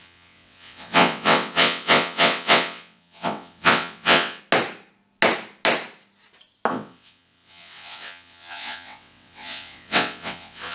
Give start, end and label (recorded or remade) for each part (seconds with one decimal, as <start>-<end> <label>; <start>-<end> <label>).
0.0-4.4 remade; 4.4-6.7 recorded; 6.7-10.7 remade

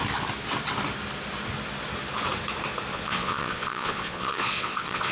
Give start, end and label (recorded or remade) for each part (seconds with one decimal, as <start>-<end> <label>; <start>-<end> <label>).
0.0-2.9 recorded; 2.9-5.1 remade

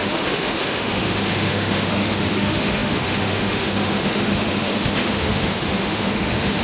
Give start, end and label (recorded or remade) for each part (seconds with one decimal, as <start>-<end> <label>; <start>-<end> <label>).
0.0-6.6 remade

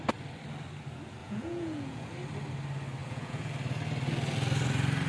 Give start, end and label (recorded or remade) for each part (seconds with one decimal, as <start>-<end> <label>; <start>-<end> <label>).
0.0-1.2 recorded; 1.2-2.1 remade; 2.1-3.0 recorded; 3.0-3.5 remade; 3.5-5.1 recorded

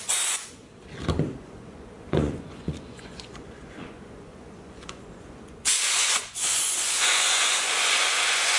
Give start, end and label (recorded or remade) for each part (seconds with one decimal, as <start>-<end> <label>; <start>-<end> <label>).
0.0-0.6 remade; 0.6-1.4 recorded; 1.4-8.6 remade